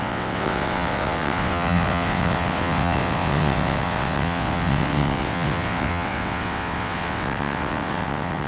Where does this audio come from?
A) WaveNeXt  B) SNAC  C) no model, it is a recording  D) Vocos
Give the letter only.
A